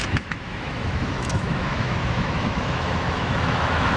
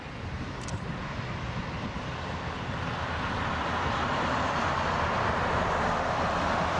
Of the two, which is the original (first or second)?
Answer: second